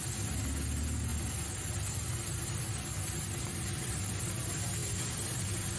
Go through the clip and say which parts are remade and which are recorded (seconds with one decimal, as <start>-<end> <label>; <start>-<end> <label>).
0.0-5.8 recorded